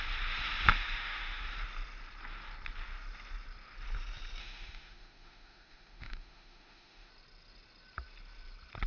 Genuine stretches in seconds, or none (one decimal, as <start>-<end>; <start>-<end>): 0.0-0.7; 1.4-4.4; 7.1-8.9